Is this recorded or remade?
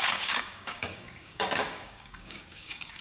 remade